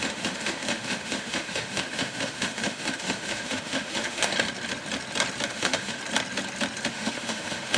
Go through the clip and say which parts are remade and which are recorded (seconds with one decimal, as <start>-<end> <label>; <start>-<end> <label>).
0.0-4.3 remade; 4.3-5.5 recorded; 5.5-6.0 remade; 6.0-6.9 recorded; 6.9-7.8 remade